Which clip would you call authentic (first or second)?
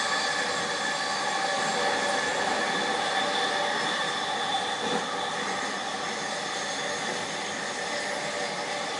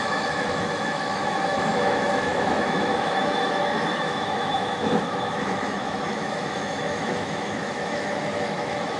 first